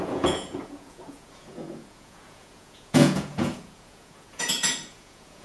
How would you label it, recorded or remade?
remade